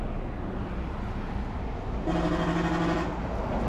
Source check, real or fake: real